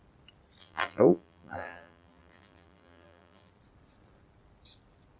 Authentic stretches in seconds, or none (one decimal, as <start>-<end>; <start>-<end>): 0.0-0.6; 3.5-5.2